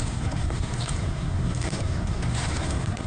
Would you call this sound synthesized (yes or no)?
yes